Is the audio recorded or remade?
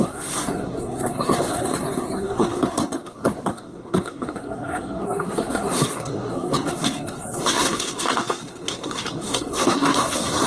remade